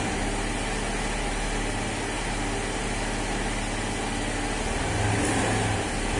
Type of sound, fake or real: real